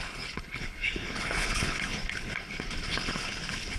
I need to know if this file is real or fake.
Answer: fake